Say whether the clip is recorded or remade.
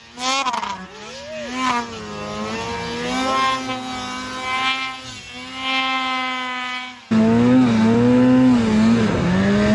recorded